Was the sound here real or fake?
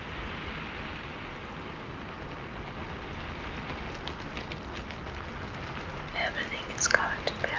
real